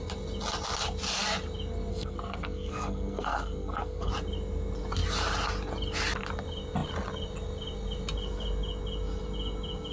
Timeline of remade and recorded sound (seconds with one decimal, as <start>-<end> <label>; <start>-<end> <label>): 0.0-1.9 recorded; 1.9-4.1 remade; 4.1-9.9 recorded